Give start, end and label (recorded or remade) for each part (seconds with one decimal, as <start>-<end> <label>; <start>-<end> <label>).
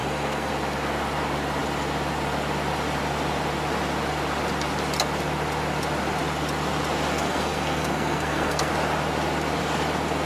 0.0-0.5 remade; 0.5-7.1 recorded; 7.1-8.7 remade; 8.7-10.3 recorded